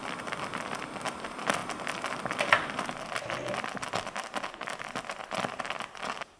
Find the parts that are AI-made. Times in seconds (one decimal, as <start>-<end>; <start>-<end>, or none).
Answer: 0.0-1.6; 5.4-6.4